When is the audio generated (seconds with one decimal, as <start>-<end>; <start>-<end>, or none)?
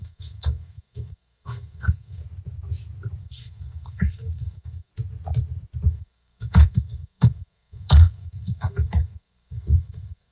0.0-2.2; 3.2-4.9; 5.9-10.3